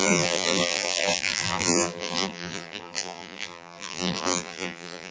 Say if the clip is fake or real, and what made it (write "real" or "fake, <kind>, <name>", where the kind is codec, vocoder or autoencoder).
fake, vocoder, BigVGAN v2